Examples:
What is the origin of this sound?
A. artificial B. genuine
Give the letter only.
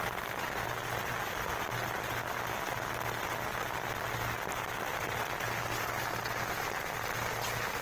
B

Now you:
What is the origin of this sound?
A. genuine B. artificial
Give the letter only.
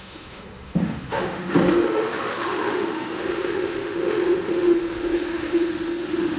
B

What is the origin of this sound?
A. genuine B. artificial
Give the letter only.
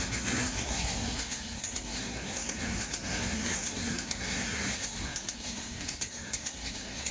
B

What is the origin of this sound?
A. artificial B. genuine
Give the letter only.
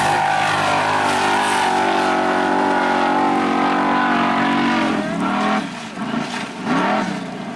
B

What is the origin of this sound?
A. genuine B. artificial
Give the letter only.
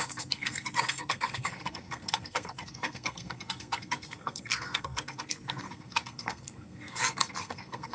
B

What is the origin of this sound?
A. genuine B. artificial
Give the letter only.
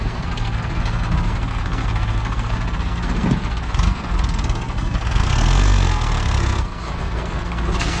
B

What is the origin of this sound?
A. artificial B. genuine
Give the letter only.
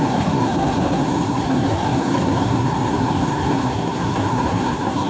A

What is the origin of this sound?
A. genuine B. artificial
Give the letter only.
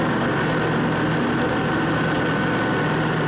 A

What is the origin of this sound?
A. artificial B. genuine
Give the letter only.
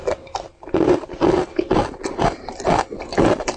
B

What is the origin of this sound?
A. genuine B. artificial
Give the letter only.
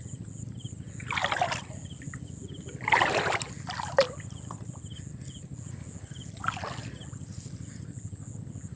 A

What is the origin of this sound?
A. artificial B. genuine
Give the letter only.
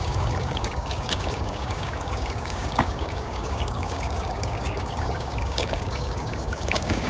A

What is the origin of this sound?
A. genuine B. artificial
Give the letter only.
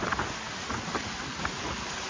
A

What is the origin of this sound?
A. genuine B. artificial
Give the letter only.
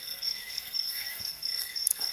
B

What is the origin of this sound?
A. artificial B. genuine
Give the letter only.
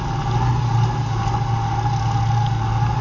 B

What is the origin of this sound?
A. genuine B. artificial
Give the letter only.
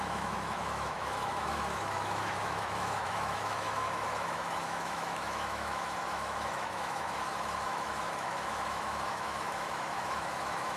B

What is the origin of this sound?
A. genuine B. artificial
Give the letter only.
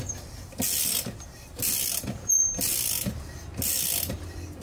A